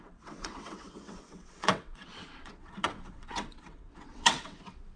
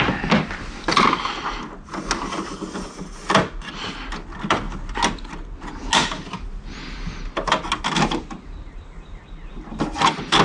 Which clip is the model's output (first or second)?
first